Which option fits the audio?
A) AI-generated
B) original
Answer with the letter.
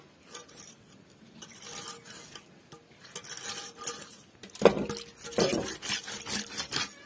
B